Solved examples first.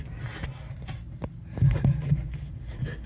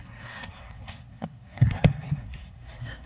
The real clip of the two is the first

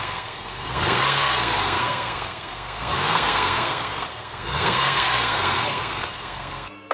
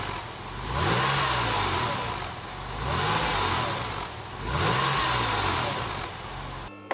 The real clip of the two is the second